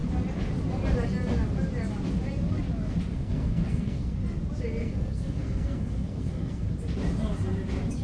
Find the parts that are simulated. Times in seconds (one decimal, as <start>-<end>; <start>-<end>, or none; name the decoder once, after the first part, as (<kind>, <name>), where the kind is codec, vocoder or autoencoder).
3.1-4.2 (codec, SNAC); 4.8-6.7

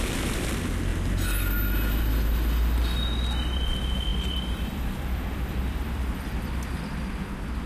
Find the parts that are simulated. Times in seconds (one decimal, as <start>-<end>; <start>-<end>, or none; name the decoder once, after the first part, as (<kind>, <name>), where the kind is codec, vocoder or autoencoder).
4.1-6.7 (vocoder, BigVGAN v2)

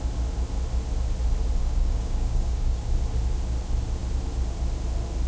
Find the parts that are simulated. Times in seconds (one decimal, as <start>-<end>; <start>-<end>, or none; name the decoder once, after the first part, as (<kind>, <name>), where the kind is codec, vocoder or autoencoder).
1.6-2.8 (codec, DAC)

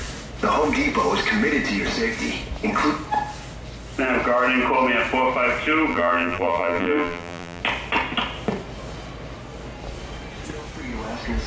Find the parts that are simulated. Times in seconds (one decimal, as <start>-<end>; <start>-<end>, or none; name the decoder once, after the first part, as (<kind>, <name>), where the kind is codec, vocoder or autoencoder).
5.9-7.6 (vocoder, BigVGAN v2)

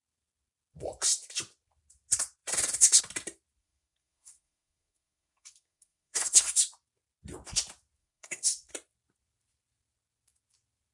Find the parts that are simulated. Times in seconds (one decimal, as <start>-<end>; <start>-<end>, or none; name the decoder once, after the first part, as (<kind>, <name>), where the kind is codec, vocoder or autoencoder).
3.6-6.6 (codec, SNAC); 8.0-8.7